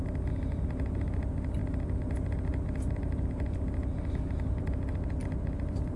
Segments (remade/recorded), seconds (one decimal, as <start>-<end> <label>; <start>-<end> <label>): 0.0-6.0 recorded